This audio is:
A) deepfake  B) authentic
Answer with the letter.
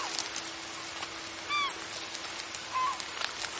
B